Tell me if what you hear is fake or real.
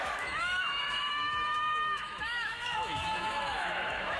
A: fake